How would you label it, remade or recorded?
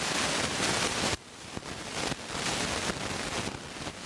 recorded